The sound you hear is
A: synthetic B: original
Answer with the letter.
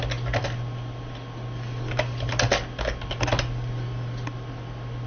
B